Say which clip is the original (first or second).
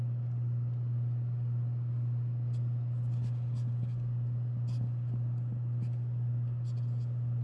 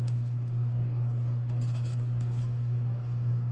first